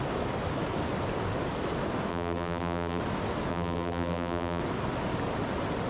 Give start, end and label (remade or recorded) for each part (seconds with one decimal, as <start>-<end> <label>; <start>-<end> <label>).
0.0-2.1 recorded; 2.1-3.0 remade; 3.0-3.5 recorded; 3.5-4.6 remade; 4.6-5.9 recorded